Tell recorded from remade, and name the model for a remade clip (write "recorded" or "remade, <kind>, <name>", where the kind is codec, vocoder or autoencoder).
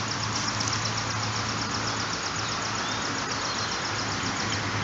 recorded